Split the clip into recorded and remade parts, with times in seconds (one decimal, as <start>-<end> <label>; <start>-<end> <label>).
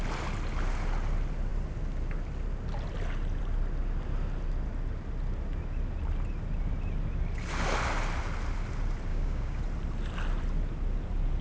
0.0-9.1 recorded; 9.1-9.6 remade; 9.6-11.4 recorded